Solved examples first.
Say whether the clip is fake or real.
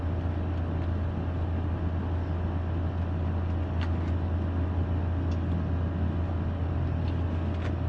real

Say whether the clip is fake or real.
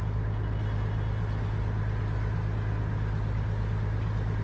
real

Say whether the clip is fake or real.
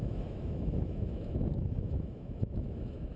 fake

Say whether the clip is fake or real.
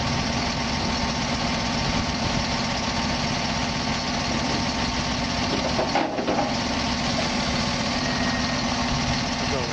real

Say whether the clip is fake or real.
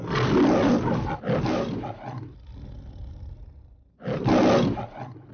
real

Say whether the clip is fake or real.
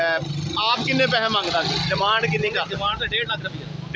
real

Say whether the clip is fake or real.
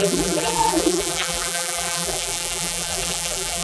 fake